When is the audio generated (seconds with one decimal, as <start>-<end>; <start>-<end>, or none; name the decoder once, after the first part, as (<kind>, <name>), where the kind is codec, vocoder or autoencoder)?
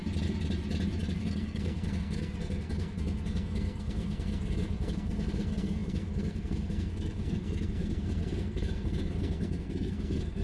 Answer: 1.2-10.4 (codec, SNAC)